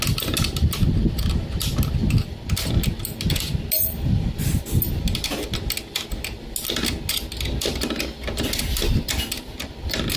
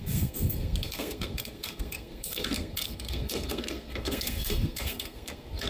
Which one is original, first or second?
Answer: first